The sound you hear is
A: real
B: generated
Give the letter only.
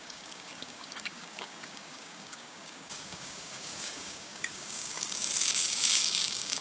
B